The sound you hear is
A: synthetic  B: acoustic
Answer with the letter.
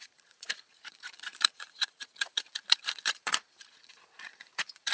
A